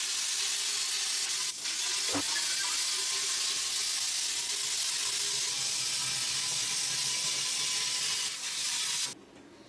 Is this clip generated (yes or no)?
no